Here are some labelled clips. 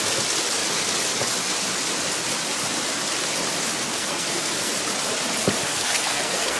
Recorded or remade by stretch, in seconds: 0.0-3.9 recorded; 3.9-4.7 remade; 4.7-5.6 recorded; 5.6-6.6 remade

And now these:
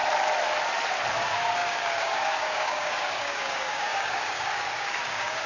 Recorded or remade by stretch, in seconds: 0.0-1.1 recorded; 1.1-5.5 remade

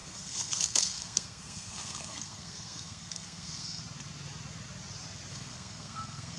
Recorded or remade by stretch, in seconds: 0.0-3.8 remade; 3.8-5.3 recorded; 5.3-6.4 remade

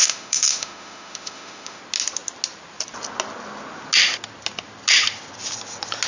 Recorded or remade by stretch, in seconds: 0.0-1.8 remade; 1.8-6.1 recorded

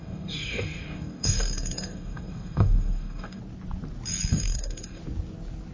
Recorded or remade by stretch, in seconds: 0.0-3.4 remade; 3.4-4.3 recorded; 4.3-5.0 remade; 5.0-5.7 recorded

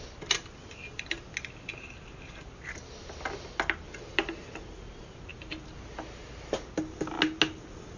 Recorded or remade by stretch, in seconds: 0.0-8.0 recorded

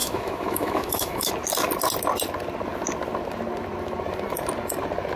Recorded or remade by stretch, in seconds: 0.0-1.3 remade; 1.3-5.2 recorded

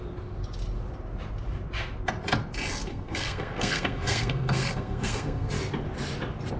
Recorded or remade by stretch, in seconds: 0.0-2.9 recorded; 2.9-5.5 remade; 5.5-6.6 recorded